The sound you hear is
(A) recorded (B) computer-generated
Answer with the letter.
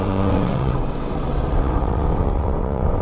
B